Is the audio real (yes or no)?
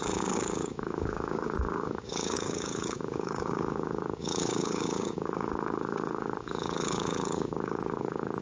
no